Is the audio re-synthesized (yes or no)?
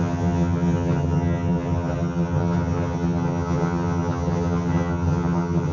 yes